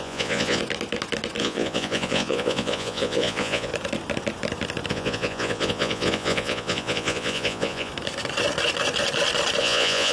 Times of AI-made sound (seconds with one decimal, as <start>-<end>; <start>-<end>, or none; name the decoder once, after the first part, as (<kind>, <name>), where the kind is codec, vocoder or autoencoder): 0.0-0.6 (vocoder, Vocos); 1.4-3.7; 4.9-7.9; 9.6-10.1